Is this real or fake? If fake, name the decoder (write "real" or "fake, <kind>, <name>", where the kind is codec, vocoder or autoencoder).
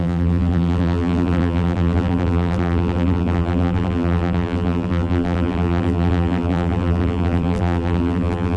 fake, vocoder, BigVGAN v2